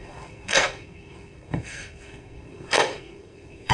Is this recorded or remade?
remade